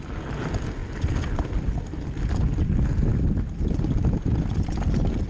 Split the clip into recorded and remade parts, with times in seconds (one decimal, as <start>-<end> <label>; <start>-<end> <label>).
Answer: 0.0-0.8 recorded; 0.8-1.7 remade; 1.7-3.1 recorded; 3.1-4.8 remade; 4.8-5.3 recorded